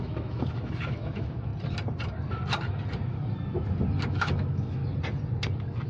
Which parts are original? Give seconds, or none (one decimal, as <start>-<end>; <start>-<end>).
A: 1.5-4.1; 4.8-5.9